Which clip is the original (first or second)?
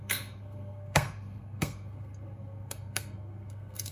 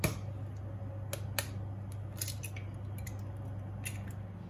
second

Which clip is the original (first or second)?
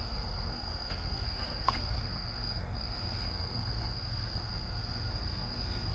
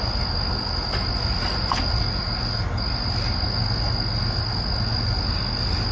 second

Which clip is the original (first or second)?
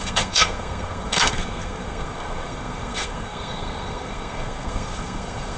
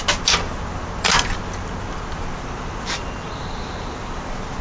second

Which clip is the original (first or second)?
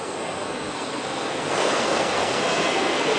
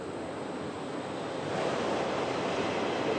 second